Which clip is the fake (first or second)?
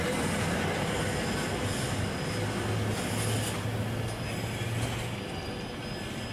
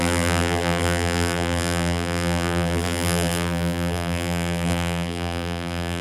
second